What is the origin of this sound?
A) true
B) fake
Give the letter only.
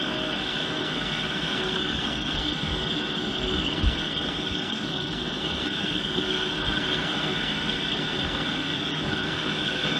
B